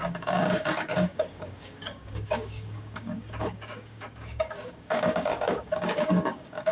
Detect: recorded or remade remade